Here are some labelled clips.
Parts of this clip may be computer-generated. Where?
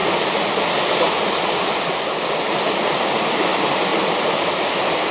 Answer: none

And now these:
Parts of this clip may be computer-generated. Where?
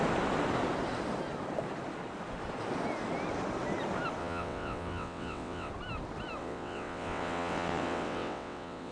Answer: 4.2-5.7 (vocoder, WaveNeXt); 6.4-8.9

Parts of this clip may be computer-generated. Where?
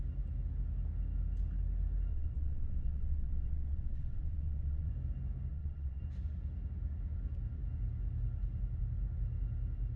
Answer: 2.1-4.9 (vocoder, WaveNeXt); 5.5-6.0